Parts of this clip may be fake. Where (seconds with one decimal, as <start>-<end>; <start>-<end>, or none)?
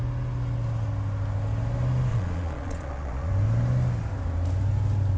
2.1-3.3